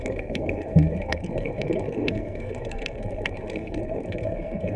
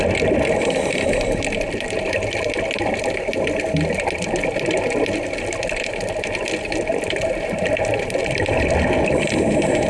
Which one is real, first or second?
second